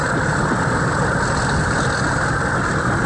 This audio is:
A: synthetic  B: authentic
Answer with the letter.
B